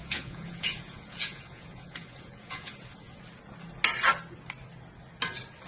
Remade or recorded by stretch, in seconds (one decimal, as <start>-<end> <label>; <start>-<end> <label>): 0.0-3.2 remade; 3.2-5.7 recorded